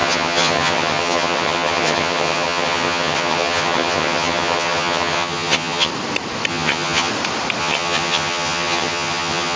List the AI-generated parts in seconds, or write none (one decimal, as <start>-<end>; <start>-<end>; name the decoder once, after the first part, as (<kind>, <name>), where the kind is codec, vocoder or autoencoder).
0.0-5.9 (vocoder, HiFi-GAN); 6.5-7.1; 7.6-9.6